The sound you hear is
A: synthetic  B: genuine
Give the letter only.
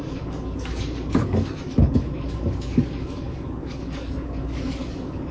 A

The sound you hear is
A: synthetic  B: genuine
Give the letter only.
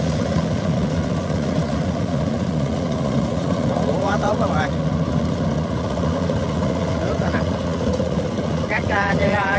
A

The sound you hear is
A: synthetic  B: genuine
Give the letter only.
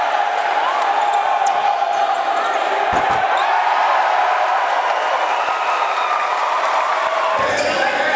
B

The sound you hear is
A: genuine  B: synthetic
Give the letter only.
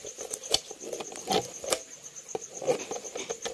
A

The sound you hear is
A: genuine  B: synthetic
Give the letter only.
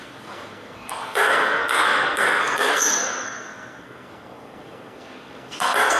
B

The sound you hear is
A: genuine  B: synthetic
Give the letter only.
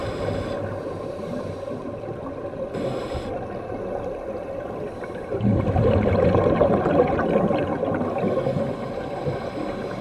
A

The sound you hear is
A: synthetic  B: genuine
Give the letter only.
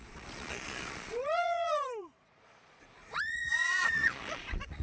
A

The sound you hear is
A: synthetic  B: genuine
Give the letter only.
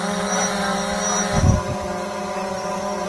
B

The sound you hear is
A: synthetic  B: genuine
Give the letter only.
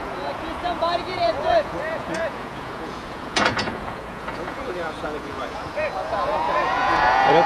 A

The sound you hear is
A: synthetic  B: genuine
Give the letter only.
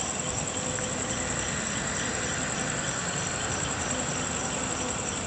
B